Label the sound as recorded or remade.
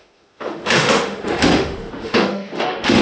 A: remade